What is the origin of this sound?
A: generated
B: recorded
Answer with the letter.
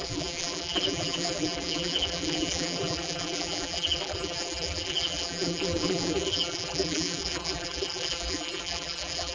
A